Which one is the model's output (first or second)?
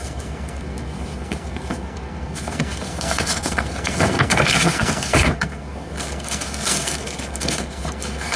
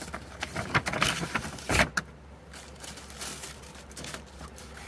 first